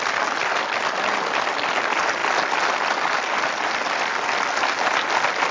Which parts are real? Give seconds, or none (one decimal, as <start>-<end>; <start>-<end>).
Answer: 0.0-0.4; 1.5-5.5